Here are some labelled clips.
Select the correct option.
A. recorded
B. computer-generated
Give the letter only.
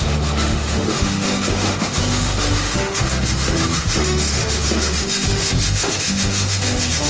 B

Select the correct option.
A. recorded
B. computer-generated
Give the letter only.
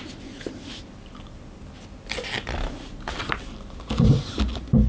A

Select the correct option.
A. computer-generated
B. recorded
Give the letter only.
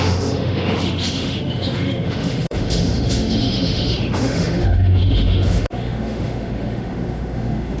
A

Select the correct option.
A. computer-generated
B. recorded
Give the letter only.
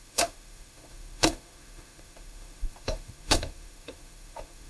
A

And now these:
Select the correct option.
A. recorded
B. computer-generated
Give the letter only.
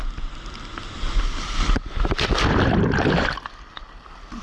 A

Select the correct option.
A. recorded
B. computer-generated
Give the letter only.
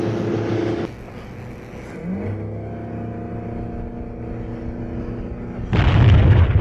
A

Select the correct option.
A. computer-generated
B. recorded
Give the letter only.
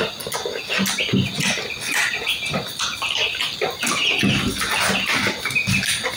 B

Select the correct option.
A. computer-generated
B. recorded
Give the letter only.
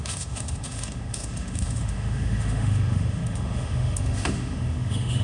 A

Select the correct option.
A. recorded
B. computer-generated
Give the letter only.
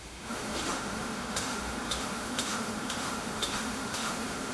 B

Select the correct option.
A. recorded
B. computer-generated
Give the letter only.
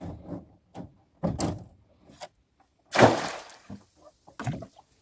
A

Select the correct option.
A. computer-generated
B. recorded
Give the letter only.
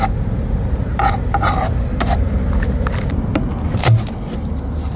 B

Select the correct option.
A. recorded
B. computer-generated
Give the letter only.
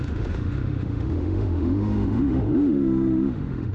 B